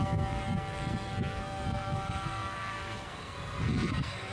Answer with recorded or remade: remade